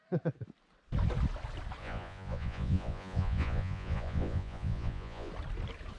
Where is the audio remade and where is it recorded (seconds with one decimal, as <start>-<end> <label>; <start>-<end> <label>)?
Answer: 0.0-1.8 recorded; 1.8-5.3 remade; 5.3-6.0 recorded

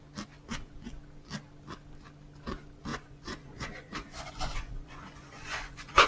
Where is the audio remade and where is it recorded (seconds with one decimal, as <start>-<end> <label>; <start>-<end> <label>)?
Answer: 0.0-2.9 recorded; 2.9-6.1 remade

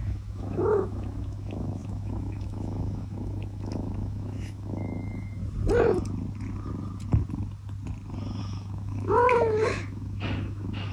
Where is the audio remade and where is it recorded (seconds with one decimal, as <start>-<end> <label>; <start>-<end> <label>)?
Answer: 0.0-5.4 remade; 5.4-8.4 recorded; 8.4-10.9 remade

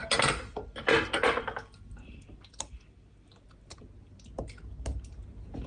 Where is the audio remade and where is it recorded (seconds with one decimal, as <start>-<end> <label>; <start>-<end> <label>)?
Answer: 0.0-5.7 recorded

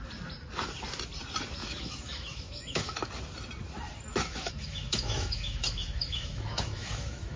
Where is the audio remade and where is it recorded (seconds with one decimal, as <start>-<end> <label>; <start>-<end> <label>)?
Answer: 0.0-1.6 recorded; 1.6-3.1 remade; 3.1-4.1 recorded; 4.1-7.4 remade

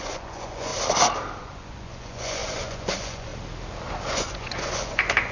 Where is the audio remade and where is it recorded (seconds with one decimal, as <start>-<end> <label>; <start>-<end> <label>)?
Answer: 0.0-0.7 remade; 0.7-1.4 recorded; 1.4-3.3 remade; 3.3-4.1 recorded; 4.1-5.3 remade

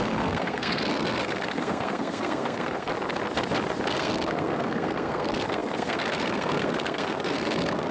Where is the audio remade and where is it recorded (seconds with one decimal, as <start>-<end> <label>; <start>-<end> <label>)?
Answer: 0.0-2.9 remade; 2.9-3.9 recorded; 3.9-7.9 remade